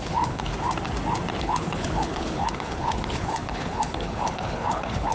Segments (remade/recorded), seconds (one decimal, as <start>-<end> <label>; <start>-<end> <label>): 0.0-0.5 remade; 0.5-1.4 recorded; 1.4-5.1 remade